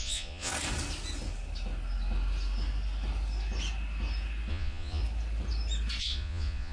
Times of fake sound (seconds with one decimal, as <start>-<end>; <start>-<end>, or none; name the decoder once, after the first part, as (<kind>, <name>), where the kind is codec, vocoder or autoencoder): 0.0-0.5 (vocoder, Vocos); 4.5-5.0; 6.0-6.7